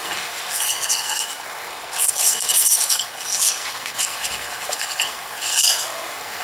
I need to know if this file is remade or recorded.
remade